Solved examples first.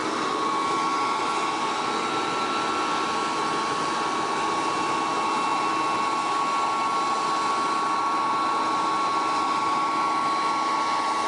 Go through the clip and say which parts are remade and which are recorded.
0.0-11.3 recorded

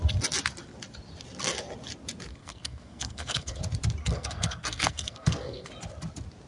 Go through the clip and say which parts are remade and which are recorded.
0.0-2.3 recorded; 2.3-3.6 remade; 3.6-4.0 recorded; 4.0-5.7 remade; 5.7-6.5 recorded